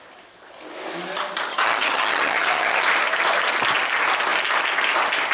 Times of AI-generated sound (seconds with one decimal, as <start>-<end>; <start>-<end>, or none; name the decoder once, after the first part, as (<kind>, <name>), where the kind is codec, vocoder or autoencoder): 1.5-2.8 (vocoder, HiFi-GAN)